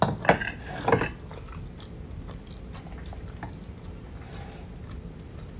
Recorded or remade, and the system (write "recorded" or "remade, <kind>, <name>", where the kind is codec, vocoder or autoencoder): recorded